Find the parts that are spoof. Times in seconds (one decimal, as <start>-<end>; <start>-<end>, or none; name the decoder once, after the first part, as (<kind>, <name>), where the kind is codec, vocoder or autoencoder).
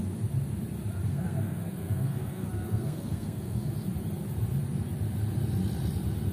1.1-3.7 (codec, SNAC)